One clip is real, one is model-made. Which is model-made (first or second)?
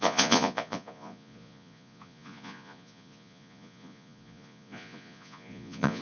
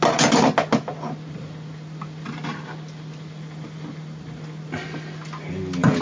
first